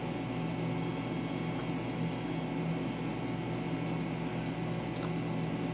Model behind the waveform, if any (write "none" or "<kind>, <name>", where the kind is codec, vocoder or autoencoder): none